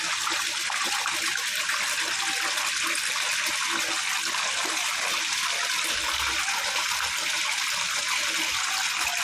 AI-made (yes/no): no